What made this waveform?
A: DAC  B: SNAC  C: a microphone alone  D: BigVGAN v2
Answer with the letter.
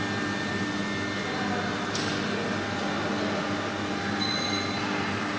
C